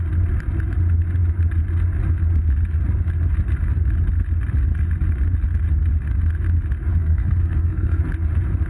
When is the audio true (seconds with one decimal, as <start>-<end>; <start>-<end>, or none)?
0.0-6.9; 8.0-8.7